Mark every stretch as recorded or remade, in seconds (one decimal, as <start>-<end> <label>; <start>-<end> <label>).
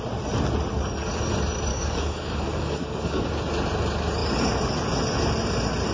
0.0-1.7 recorded; 1.7-3.3 remade; 3.3-5.9 recorded